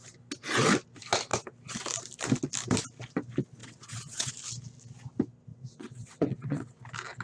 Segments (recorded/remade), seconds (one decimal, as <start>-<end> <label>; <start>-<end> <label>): 0.0-3.6 recorded; 3.6-4.3 remade; 4.3-5.5 recorded; 5.5-6.8 remade; 6.8-7.2 recorded